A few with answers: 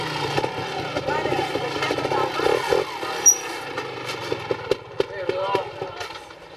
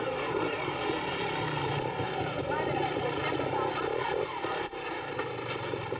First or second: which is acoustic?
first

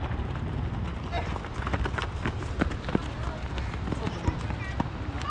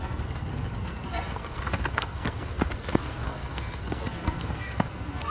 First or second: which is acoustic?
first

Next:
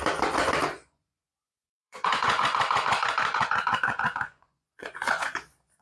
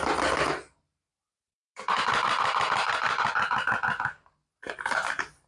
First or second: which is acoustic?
second